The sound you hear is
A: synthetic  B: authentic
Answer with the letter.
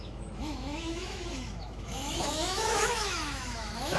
A